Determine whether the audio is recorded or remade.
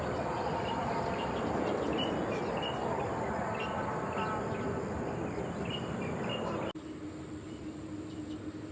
recorded